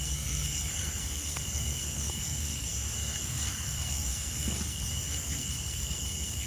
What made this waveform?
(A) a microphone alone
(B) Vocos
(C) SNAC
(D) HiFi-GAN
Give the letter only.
C